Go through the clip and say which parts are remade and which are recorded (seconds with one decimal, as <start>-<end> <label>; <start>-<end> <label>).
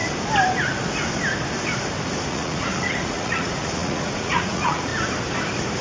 0.0-2.3 recorded; 2.3-4.9 remade; 4.9-5.8 recorded